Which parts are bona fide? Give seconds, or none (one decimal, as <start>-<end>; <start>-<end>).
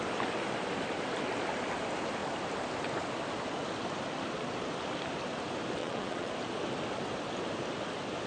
0.0-5.8; 6.3-8.3